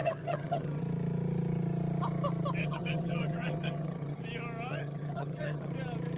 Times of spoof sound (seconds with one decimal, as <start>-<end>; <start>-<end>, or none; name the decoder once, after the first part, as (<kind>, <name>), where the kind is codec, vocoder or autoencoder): 0.0-0.8 (vocoder, HiFi-GAN); 2.6-4.2; 4.7-5.7